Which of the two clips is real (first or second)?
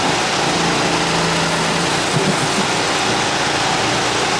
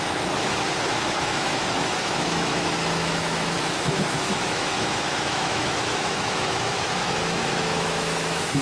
first